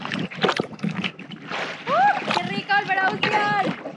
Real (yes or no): yes